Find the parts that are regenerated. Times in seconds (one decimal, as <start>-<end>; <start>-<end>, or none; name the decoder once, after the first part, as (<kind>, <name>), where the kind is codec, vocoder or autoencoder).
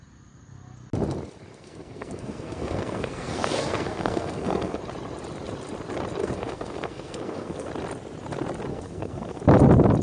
1.5-4.8 (codec, SNAC); 6.2-7.7; 8.7-9.4